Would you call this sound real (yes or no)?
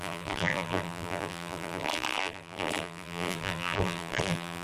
no